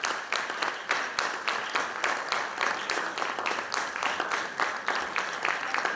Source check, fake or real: real